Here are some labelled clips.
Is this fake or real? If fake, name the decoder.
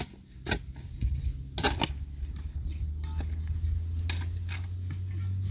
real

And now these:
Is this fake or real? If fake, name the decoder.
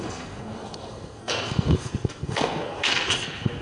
fake, codec, SNAC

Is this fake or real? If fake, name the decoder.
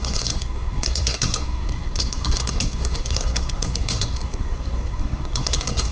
fake, codec, SNAC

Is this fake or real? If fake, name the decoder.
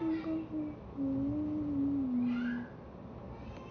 real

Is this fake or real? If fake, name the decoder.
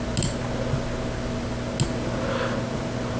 real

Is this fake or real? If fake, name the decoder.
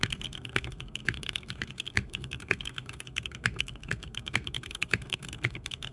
fake, codec, SNAC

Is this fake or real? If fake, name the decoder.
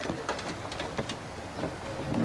real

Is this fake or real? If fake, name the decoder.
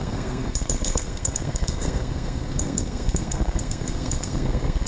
fake, codec, SNAC